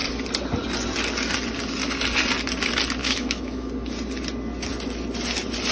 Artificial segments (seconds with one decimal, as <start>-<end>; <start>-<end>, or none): 3.0-3.7